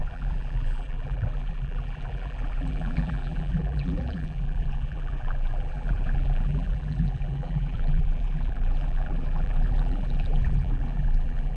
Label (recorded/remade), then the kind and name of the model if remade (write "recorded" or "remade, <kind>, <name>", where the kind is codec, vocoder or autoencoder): remade, vocoder, BigVGAN v2